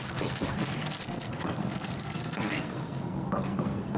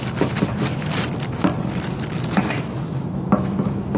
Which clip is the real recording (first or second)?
second